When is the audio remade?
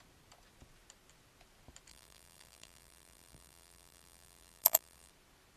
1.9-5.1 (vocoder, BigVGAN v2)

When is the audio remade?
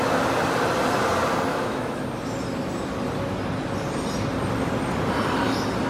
1.5-2.0 (autoencoder, DAC-VAE)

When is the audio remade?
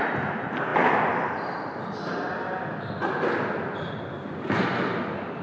none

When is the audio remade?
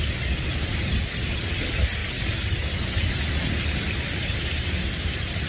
none